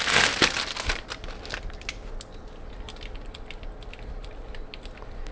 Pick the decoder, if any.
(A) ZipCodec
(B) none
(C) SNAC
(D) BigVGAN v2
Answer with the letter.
B